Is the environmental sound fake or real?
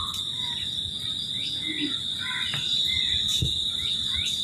real